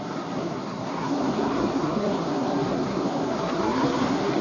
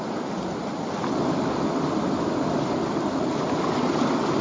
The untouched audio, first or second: second